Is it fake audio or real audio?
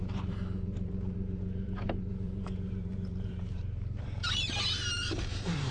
fake